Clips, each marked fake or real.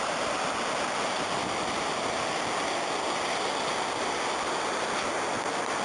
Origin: real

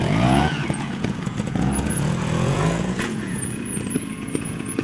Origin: fake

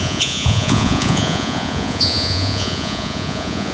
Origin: fake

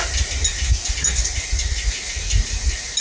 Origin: real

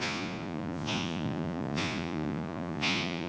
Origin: fake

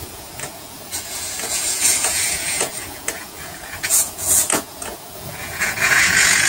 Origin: fake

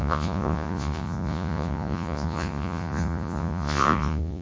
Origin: fake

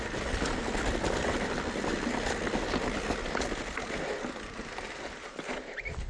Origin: real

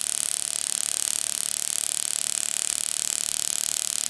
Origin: real